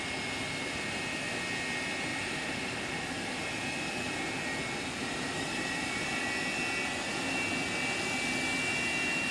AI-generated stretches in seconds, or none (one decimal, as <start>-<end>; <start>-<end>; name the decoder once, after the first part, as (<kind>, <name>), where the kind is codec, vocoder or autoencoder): 2.1-3.5 (vocoder, BigVGAN v2); 5.0-6.2